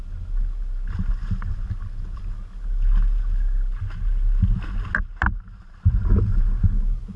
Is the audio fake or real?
real